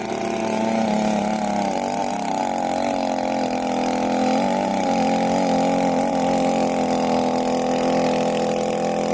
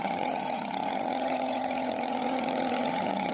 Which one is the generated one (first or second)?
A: second